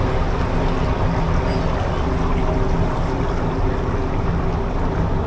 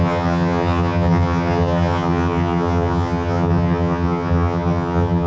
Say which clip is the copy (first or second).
second